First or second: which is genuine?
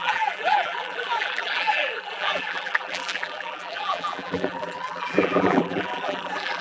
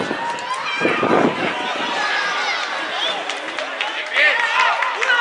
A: second